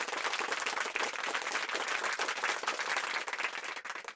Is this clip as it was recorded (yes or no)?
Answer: yes